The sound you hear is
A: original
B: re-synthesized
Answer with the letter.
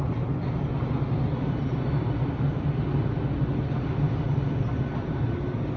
A